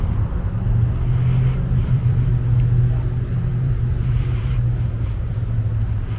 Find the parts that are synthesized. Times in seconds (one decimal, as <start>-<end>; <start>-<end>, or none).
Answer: 1.8-2.3; 3.5-5.6